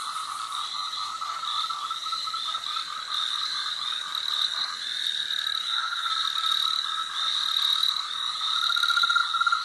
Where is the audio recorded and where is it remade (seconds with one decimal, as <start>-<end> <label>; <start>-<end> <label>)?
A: 0.0-5.6 recorded; 5.6-6.1 remade; 6.1-9.6 recorded